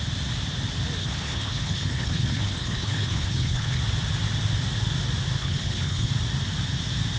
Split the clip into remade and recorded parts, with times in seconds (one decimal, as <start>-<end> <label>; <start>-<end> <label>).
0.0-1.0 recorded; 1.0-3.8 remade; 3.8-5.4 recorded; 5.4-6.1 remade; 6.1-7.2 recorded